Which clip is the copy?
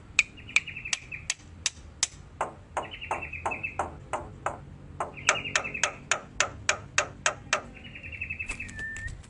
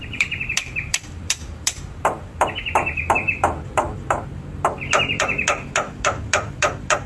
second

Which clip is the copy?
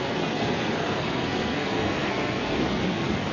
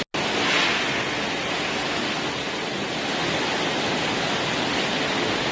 first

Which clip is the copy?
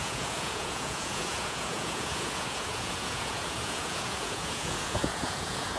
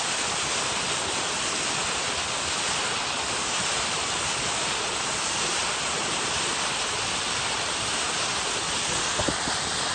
first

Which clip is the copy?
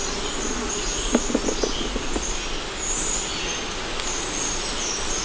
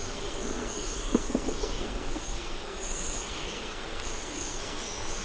second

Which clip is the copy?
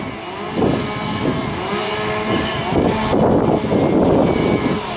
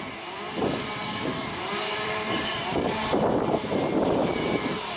second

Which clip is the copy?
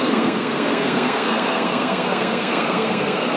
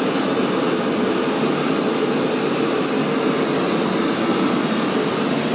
first